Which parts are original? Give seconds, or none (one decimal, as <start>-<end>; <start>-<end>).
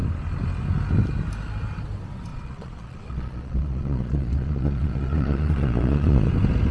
0.0-2.3; 6.3-6.7